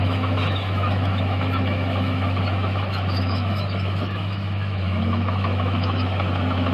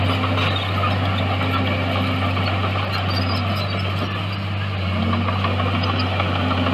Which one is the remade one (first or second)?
first